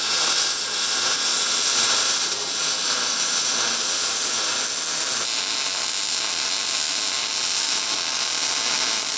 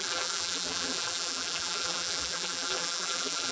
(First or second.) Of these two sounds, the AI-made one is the second